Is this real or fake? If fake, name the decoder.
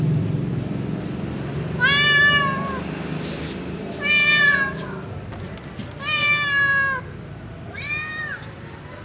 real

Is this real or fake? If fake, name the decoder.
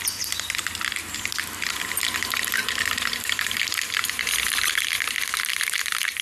real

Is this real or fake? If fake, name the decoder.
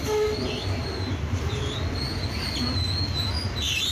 real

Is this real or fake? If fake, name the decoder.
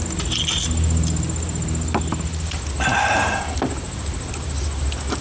real